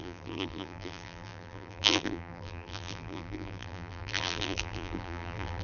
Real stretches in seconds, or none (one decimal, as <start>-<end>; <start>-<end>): none